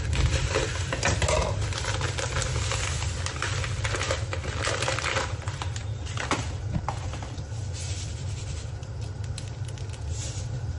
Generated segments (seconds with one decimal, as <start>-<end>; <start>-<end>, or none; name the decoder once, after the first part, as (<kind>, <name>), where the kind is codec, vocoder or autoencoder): 7.6-8.8 (vocoder, BigVGAN v2)